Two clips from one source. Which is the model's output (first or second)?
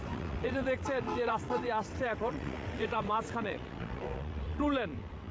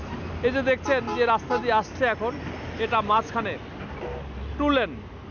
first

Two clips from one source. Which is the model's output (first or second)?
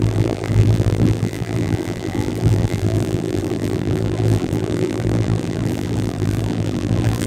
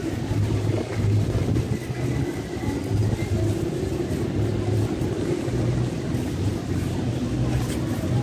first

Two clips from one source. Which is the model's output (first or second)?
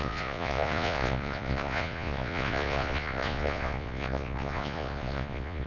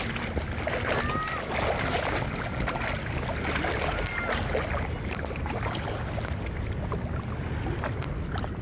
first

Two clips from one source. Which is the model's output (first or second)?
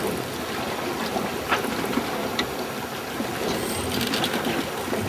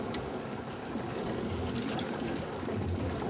second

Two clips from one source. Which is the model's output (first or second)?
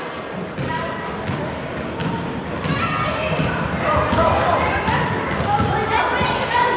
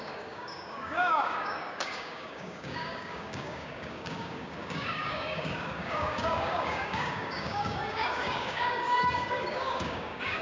second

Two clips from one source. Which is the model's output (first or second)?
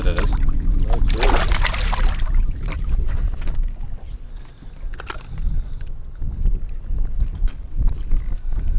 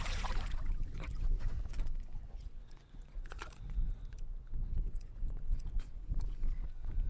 second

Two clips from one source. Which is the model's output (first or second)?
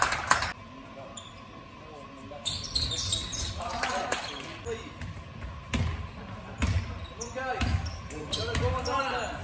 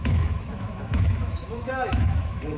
second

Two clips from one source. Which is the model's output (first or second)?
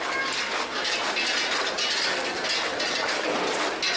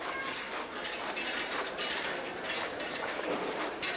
second